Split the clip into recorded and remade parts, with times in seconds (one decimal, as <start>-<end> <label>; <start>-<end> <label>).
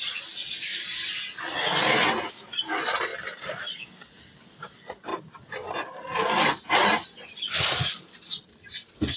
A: 0.0-9.2 recorded